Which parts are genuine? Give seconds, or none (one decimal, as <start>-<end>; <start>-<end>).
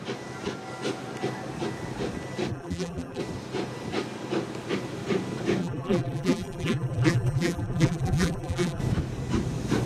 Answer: 0.0-2.5; 3.2-5.6; 8.8-9.9